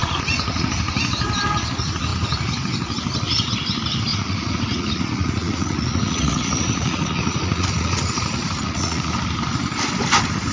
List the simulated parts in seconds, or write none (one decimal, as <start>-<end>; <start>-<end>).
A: 0.0-0.7; 4.1-9.1